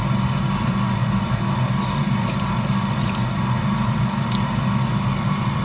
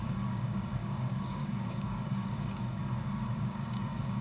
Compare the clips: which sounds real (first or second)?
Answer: first